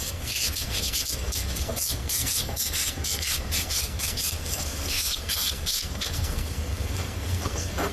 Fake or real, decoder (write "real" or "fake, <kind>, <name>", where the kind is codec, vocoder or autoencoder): fake, codec, SNAC